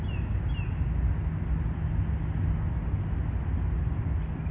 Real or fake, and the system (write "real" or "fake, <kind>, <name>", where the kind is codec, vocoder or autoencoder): real